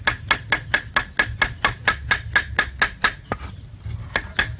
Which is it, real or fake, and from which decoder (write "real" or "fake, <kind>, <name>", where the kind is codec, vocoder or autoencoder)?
real